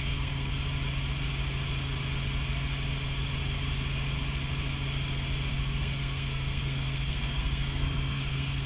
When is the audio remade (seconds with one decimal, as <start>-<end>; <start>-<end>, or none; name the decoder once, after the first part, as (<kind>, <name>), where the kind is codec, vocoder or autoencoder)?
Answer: 0.0-0.5 (codec, SNAC); 5.5-8.7